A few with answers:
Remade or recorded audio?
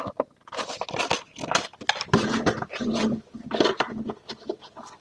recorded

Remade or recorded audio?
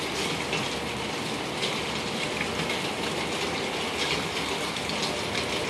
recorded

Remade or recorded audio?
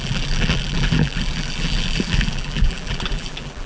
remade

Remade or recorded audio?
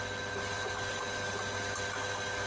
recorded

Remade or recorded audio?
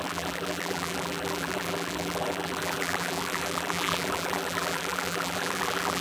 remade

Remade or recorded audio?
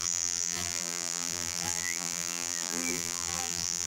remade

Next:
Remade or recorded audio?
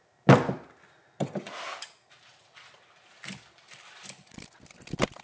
recorded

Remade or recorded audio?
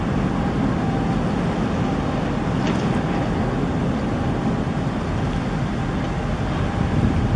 recorded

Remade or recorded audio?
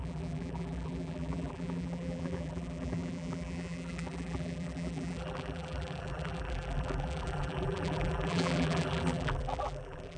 remade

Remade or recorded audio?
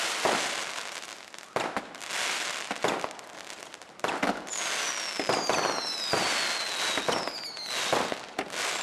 recorded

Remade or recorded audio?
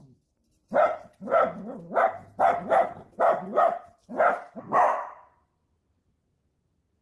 recorded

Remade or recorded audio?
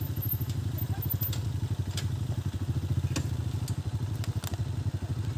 recorded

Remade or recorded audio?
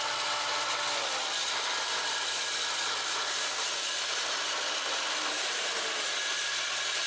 recorded